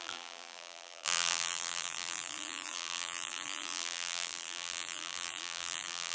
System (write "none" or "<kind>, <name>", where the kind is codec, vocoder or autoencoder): vocoder, BigVGAN v2